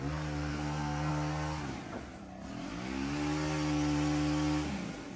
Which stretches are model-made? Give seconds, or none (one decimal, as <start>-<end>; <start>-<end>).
0.5-1.1